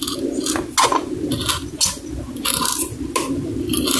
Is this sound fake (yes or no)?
no